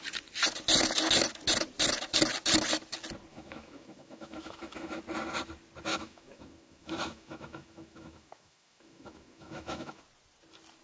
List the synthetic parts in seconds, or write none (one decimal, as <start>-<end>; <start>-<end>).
3.3-5.0; 5.9-10.0